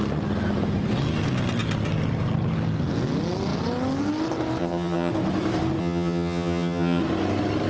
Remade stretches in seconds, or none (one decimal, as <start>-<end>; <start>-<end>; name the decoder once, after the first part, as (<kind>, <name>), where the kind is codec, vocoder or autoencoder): 4.6-5.1 (vocoder, HiFi-GAN); 5.8-7.0